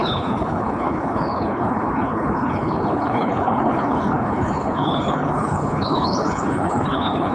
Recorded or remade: remade